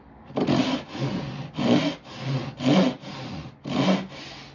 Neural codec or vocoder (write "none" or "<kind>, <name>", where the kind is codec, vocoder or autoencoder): none